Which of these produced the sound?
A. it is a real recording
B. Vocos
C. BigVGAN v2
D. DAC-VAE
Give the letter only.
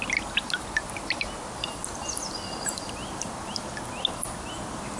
A